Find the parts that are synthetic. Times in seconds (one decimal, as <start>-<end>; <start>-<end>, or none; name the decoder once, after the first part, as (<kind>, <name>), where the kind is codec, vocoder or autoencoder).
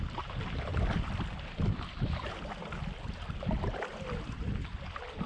none